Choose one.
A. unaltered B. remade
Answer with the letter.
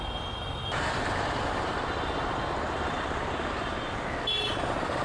A